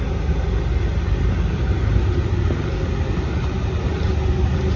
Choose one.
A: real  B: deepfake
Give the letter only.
A